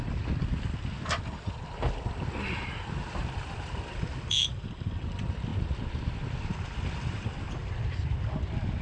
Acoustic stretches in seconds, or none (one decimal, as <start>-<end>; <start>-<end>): 0.0-8.8